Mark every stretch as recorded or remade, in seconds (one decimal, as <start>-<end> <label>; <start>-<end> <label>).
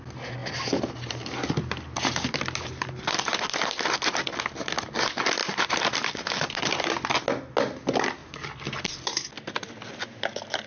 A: 0.0-5.4 recorded; 5.4-6.6 remade; 6.6-10.7 recorded